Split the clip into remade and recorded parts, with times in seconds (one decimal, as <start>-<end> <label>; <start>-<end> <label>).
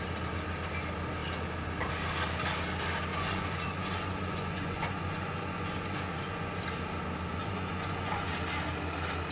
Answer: 0.0-3.1 recorded; 3.1-6.6 remade; 6.6-7.4 recorded; 7.4-8.3 remade; 8.3-9.3 recorded